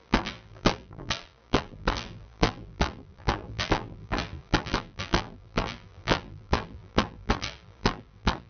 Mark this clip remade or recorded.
remade